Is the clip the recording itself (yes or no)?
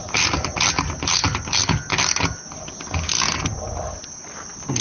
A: yes